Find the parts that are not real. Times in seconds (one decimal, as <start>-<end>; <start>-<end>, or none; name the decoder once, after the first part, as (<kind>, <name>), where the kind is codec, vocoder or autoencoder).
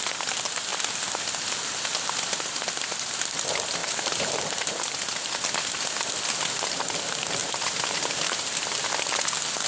3.8-5.3 (vocoder, BigVGAN v2); 7.4-8.9